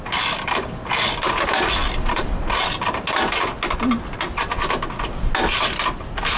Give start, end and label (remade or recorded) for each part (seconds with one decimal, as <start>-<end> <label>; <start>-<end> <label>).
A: 0.0-6.4 recorded